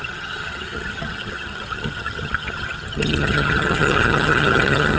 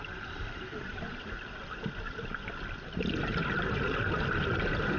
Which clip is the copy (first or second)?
first